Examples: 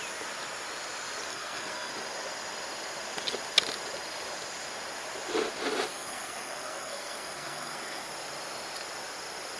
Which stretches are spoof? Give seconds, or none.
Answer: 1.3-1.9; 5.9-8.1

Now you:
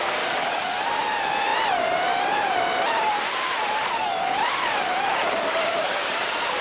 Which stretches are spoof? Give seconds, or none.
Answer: 0.0-6.6